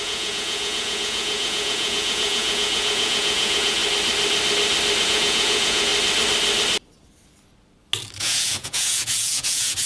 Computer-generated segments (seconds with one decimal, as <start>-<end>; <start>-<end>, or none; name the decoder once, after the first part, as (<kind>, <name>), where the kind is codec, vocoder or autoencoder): 0.0-3.8 (vocoder, Vocos); 5.0-5.9; 8.2-9.9